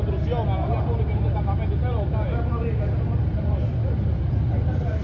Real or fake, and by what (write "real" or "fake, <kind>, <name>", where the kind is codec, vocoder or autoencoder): real